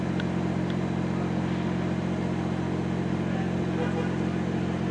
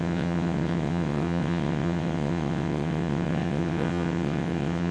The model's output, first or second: second